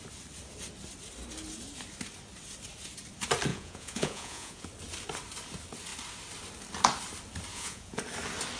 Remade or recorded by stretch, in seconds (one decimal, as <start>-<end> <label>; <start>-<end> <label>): 0.0-3.5 recorded; 3.5-4.7 remade; 4.7-7.5 recorded; 7.5-8.0 remade; 8.0-8.6 recorded